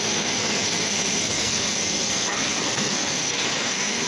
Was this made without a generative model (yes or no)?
no